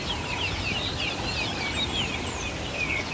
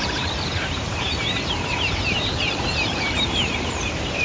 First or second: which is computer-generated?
second